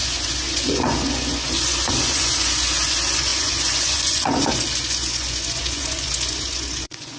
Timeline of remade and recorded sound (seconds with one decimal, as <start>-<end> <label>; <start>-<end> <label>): 0.0-7.2 remade